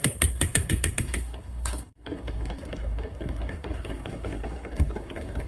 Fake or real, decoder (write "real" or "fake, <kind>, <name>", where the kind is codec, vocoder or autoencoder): fake, codec, SNAC